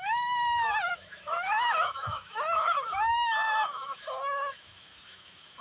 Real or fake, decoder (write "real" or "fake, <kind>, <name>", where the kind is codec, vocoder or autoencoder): fake, autoencoder, DAC-VAE